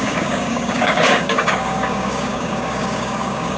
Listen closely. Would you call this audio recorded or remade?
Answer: remade